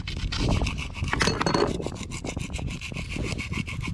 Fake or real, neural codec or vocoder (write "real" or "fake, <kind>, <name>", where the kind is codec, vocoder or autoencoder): real